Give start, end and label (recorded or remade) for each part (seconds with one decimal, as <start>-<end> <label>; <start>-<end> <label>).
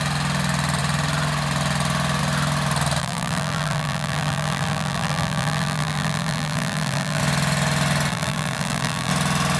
0.0-3.0 recorded; 3.0-7.2 remade; 7.2-8.1 recorded; 8.1-9.1 remade; 9.1-9.6 recorded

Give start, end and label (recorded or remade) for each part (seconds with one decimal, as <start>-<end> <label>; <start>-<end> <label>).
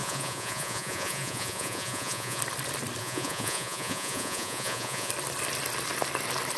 0.0-2.4 remade; 2.4-3.0 recorded; 3.0-5.1 remade; 5.1-6.6 recorded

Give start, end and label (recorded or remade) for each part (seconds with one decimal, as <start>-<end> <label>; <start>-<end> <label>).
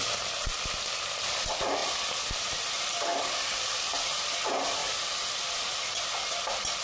0.0-3.1 recorded; 3.1-4.1 remade; 4.1-6.8 recorded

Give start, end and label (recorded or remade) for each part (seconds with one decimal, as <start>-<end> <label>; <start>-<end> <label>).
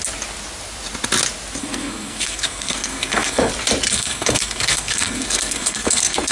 0.0-1.6 recorded; 1.6-3.5 remade; 3.5-3.9 recorded; 3.9-6.3 remade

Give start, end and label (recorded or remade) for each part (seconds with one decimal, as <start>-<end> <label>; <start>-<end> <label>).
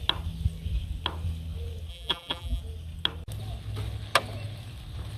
0.0-1.9 recorded; 1.9-2.6 remade; 2.6-5.2 recorded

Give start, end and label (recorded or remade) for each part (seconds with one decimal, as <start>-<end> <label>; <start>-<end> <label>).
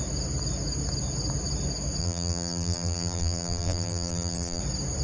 0.0-2.0 recorded; 2.0-4.6 remade; 4.6-5.0 recorded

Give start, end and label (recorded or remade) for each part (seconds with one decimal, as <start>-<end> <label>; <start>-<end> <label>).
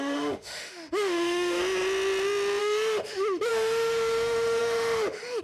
0.0-1.6 remade; 1.6-2.6 recorded; 2.6-5.4 remade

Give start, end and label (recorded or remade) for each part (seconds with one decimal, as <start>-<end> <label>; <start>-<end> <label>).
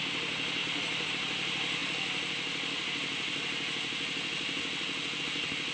0.0-0.6 recorded; 0.6-1.1 remade; 1.1-5.7 recorded